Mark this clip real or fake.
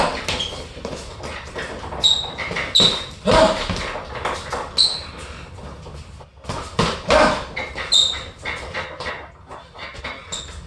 real